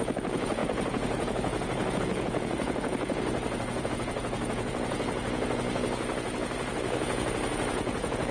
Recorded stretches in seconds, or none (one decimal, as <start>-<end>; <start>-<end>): none